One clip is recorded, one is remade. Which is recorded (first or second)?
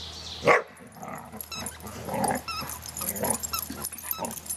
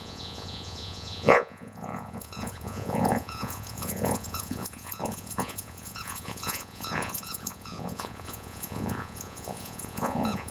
first